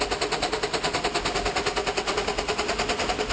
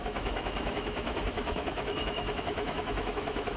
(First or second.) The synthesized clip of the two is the second